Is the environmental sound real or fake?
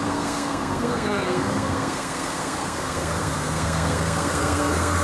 fake